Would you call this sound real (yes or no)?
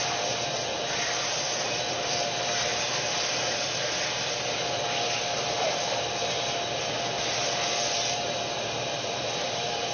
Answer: no